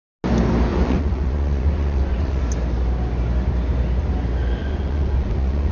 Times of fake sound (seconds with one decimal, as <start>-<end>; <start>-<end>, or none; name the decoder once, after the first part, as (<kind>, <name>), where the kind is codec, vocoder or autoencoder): 0.7-2.4 (vocoder, Vocos); 4.6-5.7